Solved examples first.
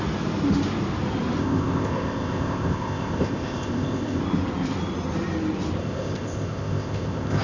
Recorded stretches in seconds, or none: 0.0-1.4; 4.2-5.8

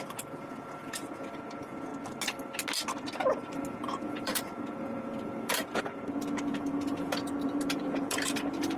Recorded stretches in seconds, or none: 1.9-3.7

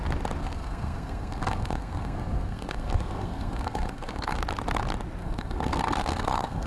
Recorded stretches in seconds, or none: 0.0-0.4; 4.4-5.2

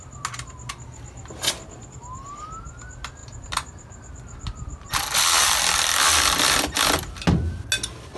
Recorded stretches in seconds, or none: 0.0-8.2

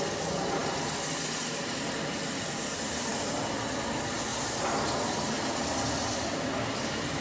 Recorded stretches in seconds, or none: 0.0-7.2

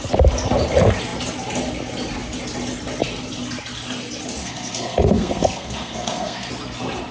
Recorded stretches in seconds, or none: 0.0-4.4; 6.5-7.1